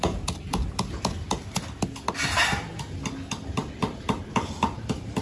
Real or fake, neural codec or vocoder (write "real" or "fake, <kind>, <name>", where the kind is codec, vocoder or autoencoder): real